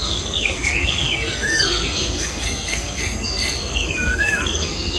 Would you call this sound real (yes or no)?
no